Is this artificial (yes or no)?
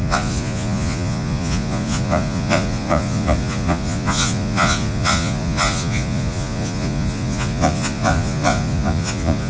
yes